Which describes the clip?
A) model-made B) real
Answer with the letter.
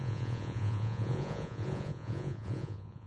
A